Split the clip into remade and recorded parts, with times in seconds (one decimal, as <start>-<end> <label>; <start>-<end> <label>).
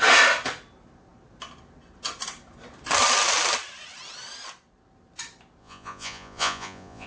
0.0-5.6 recorded; 5.6-7.1 remade